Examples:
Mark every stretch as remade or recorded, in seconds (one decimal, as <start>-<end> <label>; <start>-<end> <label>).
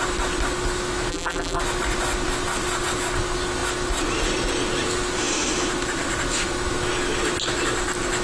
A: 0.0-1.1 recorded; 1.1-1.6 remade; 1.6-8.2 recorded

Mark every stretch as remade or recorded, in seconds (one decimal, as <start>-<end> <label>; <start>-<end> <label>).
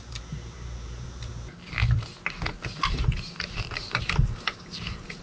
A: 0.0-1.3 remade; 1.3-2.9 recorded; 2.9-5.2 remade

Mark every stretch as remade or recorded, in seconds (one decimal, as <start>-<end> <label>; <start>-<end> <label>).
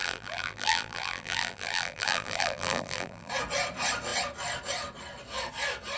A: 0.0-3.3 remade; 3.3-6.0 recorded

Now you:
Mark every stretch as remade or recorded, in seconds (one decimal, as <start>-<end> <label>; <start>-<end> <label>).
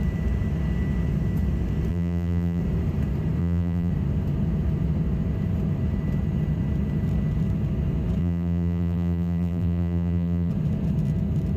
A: 0.0-1.9 recorded; 1.9-2.6 remade; 2.6-3.4 recorded; 3.4-3.9 remade; 3.9-8.2 recorded; 8.2-10.5 remade; 10.5-11.6 recorded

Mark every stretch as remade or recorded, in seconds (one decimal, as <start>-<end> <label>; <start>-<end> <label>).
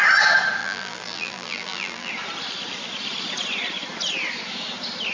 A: 0.0-0.6 recorded; 0.6-2.1 remade; 2.1-5.1 recorded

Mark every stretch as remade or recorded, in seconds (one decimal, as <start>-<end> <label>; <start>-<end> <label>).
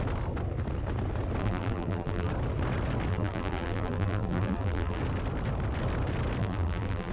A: 0.0-1.4 recorded; 1.4-2.3 remade; 2.3-3.1 recorded; 3.1-5.0 remade; 5.0-6.4 recorded; 6.4-7.1 remade